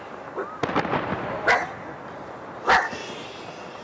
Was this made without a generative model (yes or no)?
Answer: yes